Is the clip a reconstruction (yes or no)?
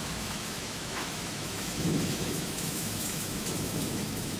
yes